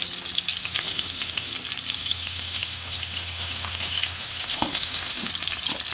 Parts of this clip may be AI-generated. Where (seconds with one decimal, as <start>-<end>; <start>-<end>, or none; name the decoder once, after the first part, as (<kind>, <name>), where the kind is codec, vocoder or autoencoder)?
0.6-1.5 (autoencoder, DAC-VAE); 2.0-5.3